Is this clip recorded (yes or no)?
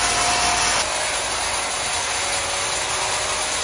yes